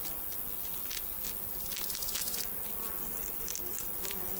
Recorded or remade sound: recorded